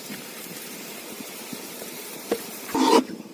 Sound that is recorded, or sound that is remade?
remade